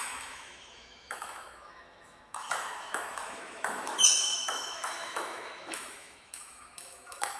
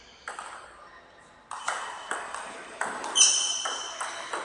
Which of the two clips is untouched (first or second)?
second